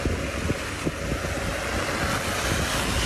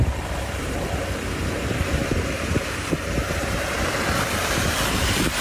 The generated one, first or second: second